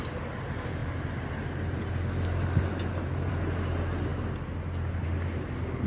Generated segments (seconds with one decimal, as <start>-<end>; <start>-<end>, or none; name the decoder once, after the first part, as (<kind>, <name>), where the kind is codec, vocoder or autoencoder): none